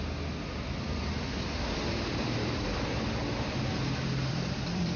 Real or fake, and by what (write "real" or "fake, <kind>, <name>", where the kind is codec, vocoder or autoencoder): fake, vocoder, BigVGAN v2